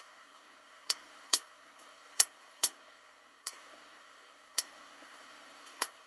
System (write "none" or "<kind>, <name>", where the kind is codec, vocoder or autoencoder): codec, SNAC